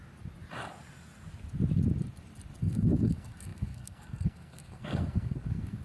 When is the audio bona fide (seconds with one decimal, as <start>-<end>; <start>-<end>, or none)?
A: 0.0-2.6